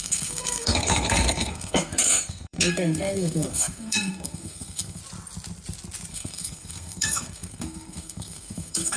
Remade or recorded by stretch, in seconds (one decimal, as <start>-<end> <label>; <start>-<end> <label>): 0.0-5.0 remade; 5.0-6.1 recorded; 6.1-9.0 remade

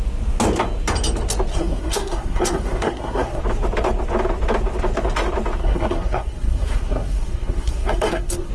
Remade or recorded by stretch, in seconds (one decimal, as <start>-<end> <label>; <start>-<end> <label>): 0.0-1.5 recorded; 1.5-3.4 remade; 3.4-5.6 recorded; 5.6-8.5 remade

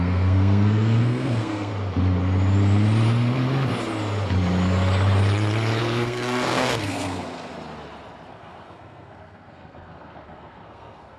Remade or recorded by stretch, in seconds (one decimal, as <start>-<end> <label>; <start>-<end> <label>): 0.0-1.7 remade; 1.7-5.8 recorded; 5.8-7.5 remade; 7.5-8.3 recorded; 8.3-11.2 remade

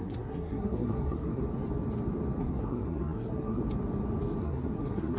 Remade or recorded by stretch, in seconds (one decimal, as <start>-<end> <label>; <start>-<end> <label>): 0.0-1.4 remade; 1.4-2.4 recorded; 2.4-3.6 remade; 3.6-4.4 recorded; 4.4-5.2 remade